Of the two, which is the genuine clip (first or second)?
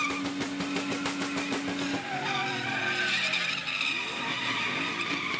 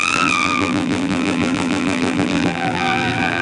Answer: first